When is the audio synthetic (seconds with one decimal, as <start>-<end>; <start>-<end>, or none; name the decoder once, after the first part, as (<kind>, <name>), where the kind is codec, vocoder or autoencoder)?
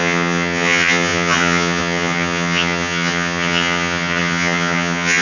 0.0-5.2 (vocoder, HiFi-GAN)